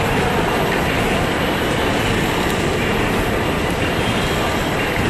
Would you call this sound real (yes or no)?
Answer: yes